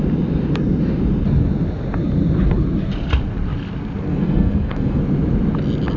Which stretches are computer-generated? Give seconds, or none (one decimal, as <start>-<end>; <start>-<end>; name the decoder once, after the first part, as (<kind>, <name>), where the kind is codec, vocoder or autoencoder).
4.1-5.0 (codec, SNAC)